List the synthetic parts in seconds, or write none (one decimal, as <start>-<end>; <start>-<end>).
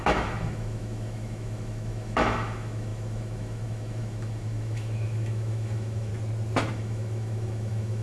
0.0-6.1; 6.7-8.0